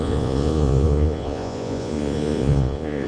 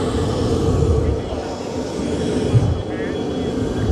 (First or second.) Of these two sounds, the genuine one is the second